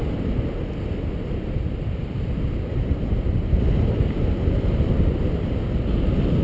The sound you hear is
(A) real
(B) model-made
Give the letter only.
A